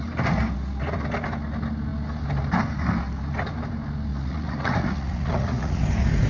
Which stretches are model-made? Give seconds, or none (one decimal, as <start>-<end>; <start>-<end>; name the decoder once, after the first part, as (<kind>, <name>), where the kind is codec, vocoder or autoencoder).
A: 4.1-5.8 (vocoder, Vocos)